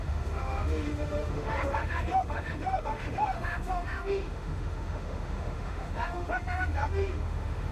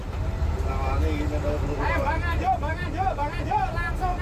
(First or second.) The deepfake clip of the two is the first